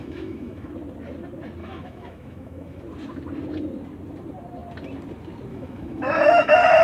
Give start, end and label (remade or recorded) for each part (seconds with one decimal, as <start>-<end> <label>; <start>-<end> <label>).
0.0-0.7 remade; 0.7-1.6 recorded; 1.6-2.8 remade; 2.8-5.5 recorded; 5.5-6.8 remade